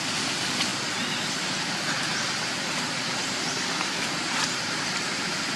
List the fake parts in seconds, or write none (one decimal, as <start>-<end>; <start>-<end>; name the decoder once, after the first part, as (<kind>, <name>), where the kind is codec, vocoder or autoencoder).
0.0-0.7 (vocoder, BigVGAN v2); 4.1-5.6